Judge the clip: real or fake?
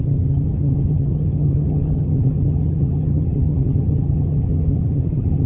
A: fake